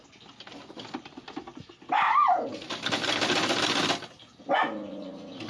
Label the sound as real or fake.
real